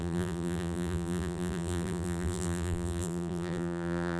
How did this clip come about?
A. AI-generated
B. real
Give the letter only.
A